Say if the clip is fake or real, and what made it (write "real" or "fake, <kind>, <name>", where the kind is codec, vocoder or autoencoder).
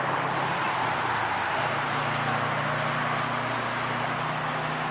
real